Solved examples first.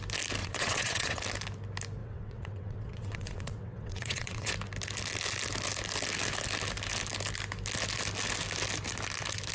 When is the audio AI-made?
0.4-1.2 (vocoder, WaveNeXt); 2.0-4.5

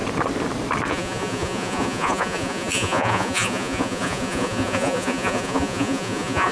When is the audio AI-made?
0.9-6.5 (vocoder, Vocos)